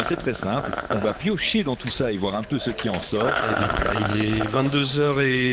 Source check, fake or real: fake